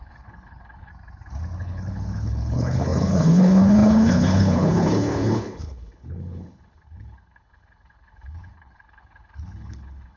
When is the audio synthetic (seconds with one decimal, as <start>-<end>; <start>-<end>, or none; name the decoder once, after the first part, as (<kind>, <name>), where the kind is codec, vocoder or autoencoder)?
0.0-0.9 (codec, HILCodec); 1.6-10.2